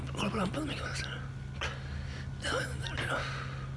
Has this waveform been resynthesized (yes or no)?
no